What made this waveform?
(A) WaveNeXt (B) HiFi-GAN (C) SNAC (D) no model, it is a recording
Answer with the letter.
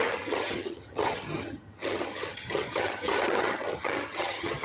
B